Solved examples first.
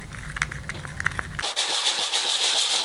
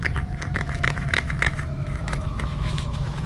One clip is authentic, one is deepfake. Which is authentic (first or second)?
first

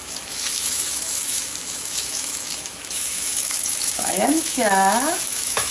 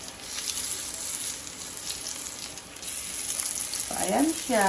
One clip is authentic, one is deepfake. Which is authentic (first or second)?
second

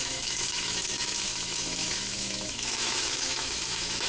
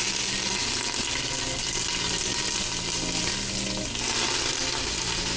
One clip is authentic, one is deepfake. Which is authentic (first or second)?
second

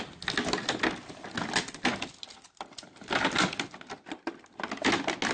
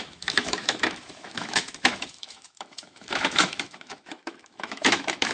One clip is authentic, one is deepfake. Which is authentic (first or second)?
first